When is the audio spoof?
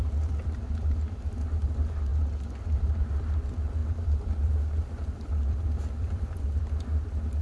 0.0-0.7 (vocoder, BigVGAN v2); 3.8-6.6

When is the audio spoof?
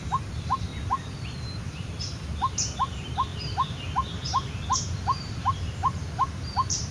0.0-0.7 (vocoder, BigVGAN v2); 1.6-6.9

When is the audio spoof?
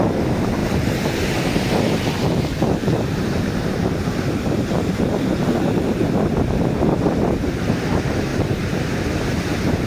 0.0-6.0 (vocoder, BigVGAN v2); 7.6-9.9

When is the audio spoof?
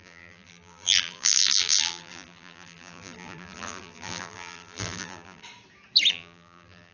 0.0-5.4 (vocoder, BigVGAN v2); 6.1-6.9